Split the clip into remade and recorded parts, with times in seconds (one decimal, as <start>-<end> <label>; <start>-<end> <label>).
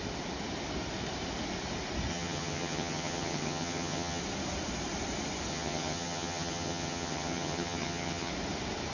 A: 0.0-2.1 recorded; 2.1-4.2 remade; 4.2-5.5 recorded; 5.5-8.3 remade; 8.3-8.9 recorded